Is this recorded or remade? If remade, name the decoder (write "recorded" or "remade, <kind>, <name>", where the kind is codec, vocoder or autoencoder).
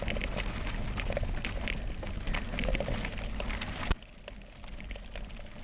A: recorded